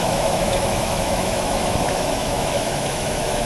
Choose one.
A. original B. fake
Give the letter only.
B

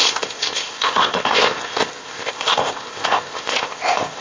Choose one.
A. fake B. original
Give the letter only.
A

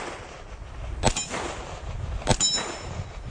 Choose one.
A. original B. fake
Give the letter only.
A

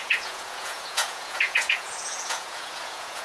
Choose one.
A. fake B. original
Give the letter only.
A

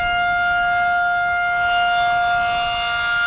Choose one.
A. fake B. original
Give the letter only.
B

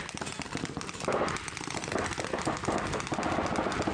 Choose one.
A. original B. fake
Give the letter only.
A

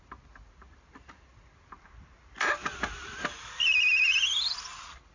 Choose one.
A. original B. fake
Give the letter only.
A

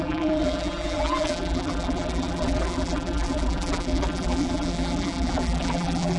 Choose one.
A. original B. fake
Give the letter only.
B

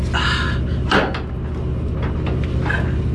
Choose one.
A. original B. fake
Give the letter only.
A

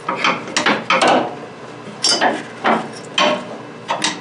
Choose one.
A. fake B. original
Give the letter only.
B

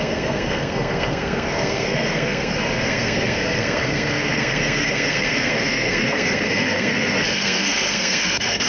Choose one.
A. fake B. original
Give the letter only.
A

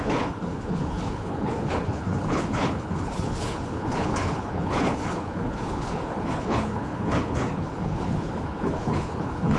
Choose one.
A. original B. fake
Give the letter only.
B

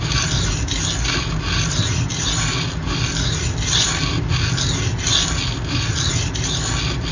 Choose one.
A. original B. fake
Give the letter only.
A